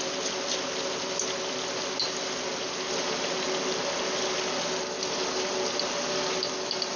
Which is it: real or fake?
real